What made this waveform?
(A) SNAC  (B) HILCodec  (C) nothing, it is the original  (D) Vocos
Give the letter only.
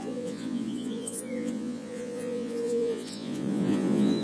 D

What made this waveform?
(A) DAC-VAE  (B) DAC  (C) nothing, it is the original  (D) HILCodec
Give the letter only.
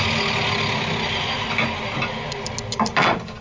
C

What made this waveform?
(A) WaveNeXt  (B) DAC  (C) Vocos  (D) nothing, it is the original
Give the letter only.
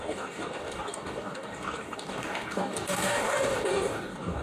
B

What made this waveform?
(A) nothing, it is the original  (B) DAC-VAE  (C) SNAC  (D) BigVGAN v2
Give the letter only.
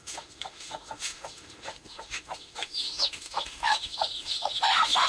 B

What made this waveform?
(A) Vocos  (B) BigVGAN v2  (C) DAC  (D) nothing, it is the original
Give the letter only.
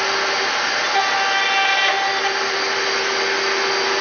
D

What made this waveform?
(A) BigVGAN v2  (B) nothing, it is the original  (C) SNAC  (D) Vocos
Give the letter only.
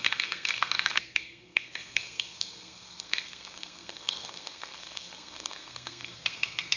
C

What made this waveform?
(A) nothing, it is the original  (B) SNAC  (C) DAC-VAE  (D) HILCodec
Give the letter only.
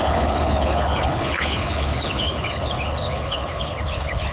D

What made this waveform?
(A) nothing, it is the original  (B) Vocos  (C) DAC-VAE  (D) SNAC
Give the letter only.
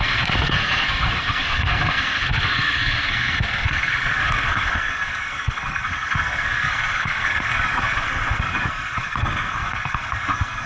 D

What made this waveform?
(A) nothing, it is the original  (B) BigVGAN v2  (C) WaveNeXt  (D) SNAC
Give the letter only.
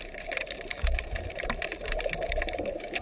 B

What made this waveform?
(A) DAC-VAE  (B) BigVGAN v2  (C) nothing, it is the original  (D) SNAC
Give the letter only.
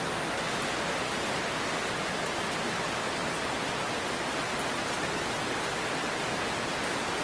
C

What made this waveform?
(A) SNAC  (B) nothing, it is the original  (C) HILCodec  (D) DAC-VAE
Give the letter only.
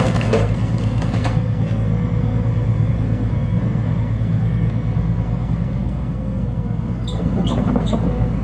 A